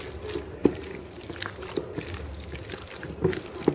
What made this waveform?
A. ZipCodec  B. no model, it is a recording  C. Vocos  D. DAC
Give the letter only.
B